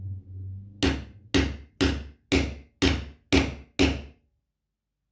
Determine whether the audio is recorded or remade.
recorded